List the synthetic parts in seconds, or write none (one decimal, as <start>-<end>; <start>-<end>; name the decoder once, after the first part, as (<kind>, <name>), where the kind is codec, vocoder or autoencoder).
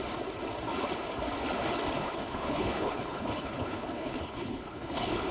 2.0-5.3 (codec, HILCodec)